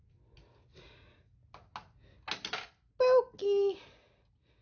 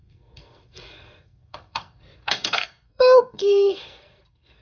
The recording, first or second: first